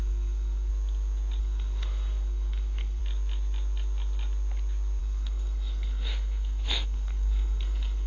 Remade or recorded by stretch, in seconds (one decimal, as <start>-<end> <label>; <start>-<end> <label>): 0.0-0.7 remade; 0.7-1.4 recorded; 1.4-3.0 remade; 3.0-5.0 recorded; 5.0-8.1 remade